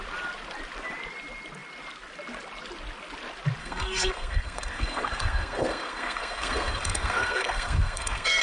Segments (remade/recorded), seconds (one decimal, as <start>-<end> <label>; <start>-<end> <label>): 0.0-3.6 recorded; 3.6-8.4 remade